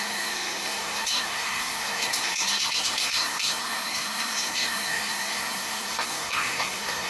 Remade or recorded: remade